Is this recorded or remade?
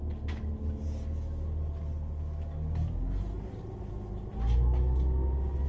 recorded